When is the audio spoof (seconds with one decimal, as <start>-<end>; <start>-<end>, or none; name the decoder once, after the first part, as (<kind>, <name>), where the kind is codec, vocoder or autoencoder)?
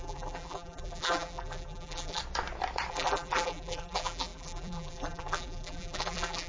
0.0-2.2 (vocoder, BigVGAN v2); 2.9-6.5